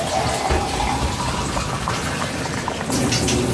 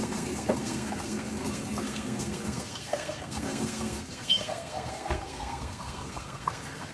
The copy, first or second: second